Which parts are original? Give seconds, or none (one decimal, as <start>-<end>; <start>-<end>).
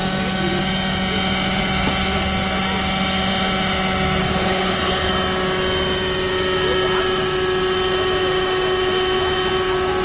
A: 0.0-4.2; 5.1-10.0